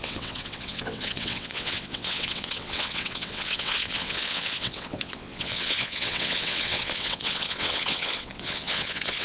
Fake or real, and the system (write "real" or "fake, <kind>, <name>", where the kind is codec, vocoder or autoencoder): fake, vocoder, WaveNeXt